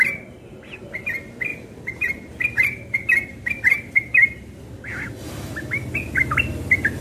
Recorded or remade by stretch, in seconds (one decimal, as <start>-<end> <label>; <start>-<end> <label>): 0.0-1.5 recorded; 1.5-4.6 remade; 4.6-7.0 recorded